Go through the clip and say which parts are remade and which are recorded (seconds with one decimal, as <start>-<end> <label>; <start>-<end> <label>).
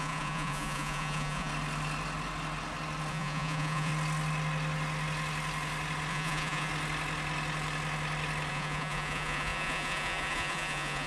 0.0-1.5 remade; 1.5-3.1 recorded; 3.1-3.9 remade; 3.9-6.1 recorded; 6.1-6.7 remade; 6.7-8.5 recorded; 8.5-11.1 remade